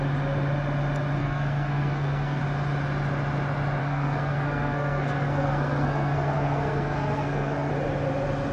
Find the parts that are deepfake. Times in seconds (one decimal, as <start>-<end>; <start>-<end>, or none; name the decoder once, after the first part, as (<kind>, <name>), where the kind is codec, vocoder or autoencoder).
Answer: 1.2-2.4 (codec, SNAC); 3.8-7.7